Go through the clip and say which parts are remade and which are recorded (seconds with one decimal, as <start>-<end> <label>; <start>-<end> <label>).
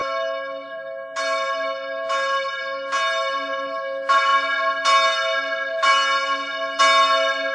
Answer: 0.0-7.5 recorded